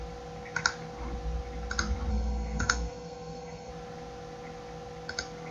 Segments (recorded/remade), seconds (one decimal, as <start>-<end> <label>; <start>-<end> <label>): 0.0-2.1 recorded; 2.1-3.7 remade; 3.7-5.5 recorded